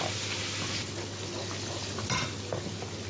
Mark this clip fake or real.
real